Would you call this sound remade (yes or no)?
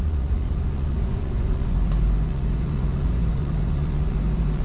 yes